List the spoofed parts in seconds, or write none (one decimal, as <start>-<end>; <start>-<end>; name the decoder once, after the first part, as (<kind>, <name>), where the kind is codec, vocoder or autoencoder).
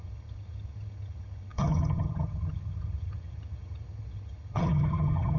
0.0-5.4 (vocoder, HiFi-GAN)